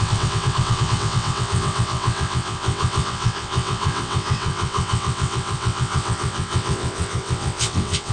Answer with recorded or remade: remade